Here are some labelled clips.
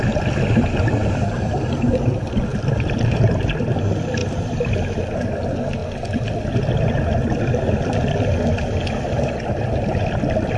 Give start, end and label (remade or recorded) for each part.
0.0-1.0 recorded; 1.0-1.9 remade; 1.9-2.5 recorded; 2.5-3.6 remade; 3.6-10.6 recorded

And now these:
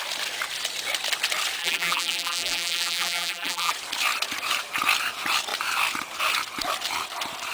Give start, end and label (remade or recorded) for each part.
0.0-1.6 recorded; 1.6-3.7 remade; 3.7-7.5 recorded

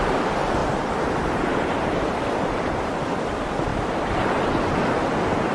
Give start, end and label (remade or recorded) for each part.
0.0-0.6 recorded; 0.6-2.8 remade; 2.8-5.5 recorded

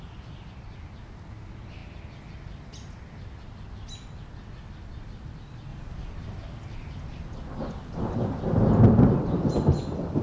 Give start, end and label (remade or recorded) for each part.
0.0-10.2 recorded

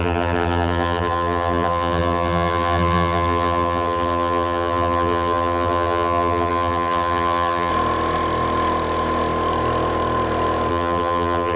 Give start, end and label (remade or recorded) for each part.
0.0-7.7 remade; 7.7-10.7 recorded; 10.7-11.6 remade

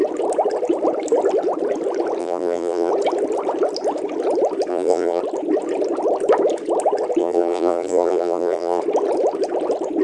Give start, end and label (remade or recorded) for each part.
0.0-2.2 recorded; 2.2-2.9 remade; 2.9-4.7 recorded; 4.7-5.2 remade; 5.2-7.2 recorded; 7.2-8.8 remade; 8.8-10.0 recorded

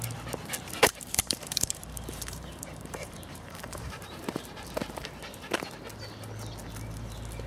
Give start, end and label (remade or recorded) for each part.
0.0-0.8 recorded; 0.8-5.2 remade; 5.2-7.5 recorded

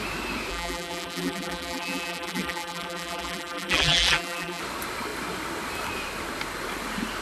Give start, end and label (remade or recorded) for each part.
0.0-0.5 recorded; 0.5-4.6 remade; 4.6-7.2 recorded